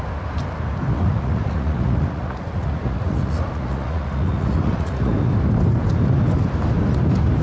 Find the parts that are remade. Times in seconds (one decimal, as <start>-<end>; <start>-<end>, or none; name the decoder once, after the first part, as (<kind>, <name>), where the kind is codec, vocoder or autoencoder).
0.9-5.3 (vocoder, Vocos)